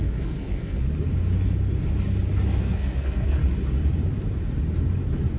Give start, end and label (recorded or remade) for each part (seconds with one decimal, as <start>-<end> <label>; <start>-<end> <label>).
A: 0.0-0.8 remade; 0.8-2.6 recorded; 2.6-3.4 remade; 3.4-5.4 recorded